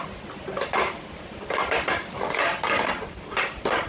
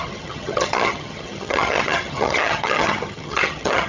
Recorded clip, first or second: first